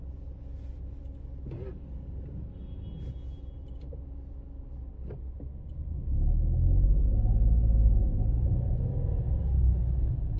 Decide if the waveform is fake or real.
real